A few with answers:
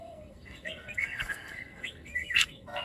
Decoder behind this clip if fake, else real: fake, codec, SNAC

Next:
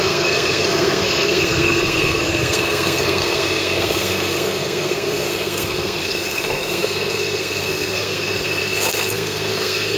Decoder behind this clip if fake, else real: fake, codec, SNAC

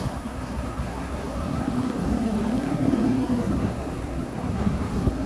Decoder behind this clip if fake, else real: fake, codec, SNAC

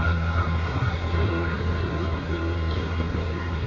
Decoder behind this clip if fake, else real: fake, codec, SNAC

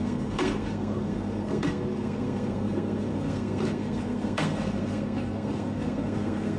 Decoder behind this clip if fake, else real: fake, codec, SNAC